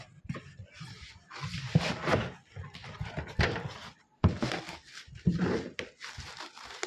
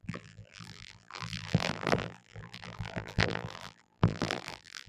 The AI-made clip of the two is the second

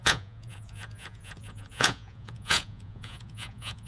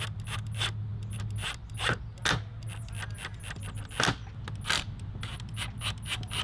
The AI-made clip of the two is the first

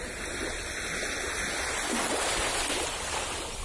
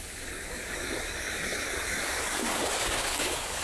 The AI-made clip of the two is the second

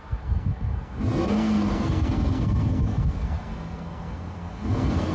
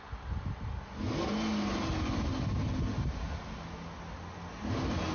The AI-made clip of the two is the first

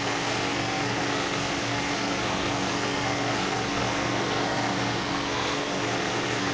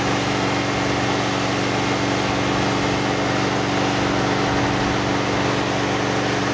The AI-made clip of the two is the first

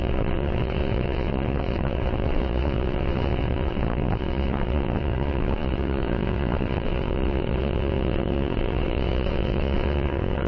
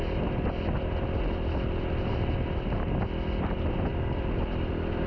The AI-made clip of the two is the first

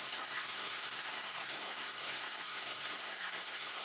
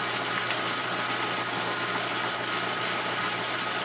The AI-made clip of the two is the first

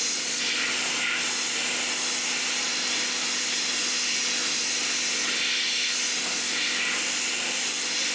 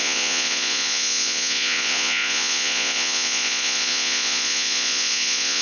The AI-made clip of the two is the second